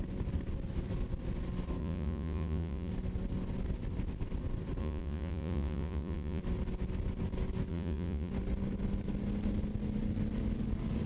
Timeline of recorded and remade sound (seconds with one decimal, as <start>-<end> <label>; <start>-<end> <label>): 0.0-1.8 recorded; 1.8-2.9 remade; 2.9-4.8 recorded; 4.8-6.4 remade; 6.4-7.7 recorded; 7.7-8.3 remade; 8.3-11.1 recorded